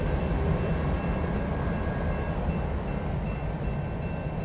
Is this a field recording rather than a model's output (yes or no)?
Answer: yes